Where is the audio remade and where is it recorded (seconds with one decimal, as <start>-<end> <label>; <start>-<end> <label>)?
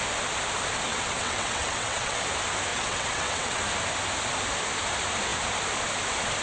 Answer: 0.0-0.9 recorded; 0.9-2.2 remade; 2.2-2.7 recorded; 2.7-3.6 remade; 3.6-6.4 recorded